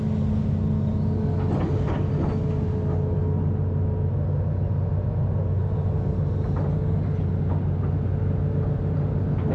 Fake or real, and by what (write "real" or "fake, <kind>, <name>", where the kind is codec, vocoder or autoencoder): real